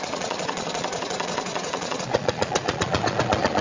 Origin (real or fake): fake